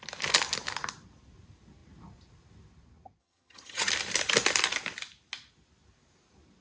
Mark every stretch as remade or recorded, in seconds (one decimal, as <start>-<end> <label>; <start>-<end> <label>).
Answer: 0.0-3.2 recorded; 3.2-3.9 remade; 3.9-6.6 recorded